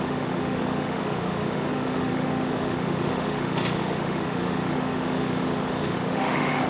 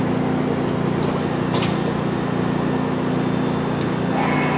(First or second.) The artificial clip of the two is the first